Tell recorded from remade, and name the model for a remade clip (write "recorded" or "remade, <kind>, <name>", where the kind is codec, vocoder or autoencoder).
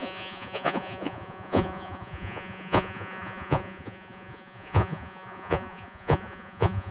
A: remade, vocoder, Vocos